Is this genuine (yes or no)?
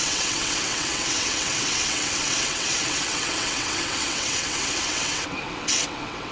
no